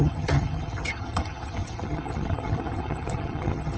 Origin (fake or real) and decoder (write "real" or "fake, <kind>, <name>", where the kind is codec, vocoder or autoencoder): fake, vocoder, HiFi-GAN